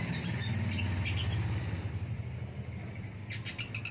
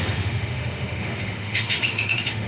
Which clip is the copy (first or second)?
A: second